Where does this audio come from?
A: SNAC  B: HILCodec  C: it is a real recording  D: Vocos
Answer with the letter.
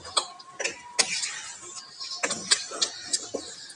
C